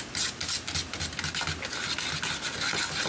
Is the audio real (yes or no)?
yes